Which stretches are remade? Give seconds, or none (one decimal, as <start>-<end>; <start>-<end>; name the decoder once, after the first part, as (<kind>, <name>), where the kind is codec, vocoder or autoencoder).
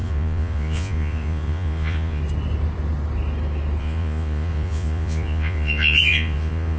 0.0-2.2 (vocoder, Vocos); 3.8-6.8